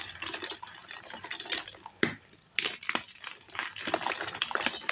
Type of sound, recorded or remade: recorded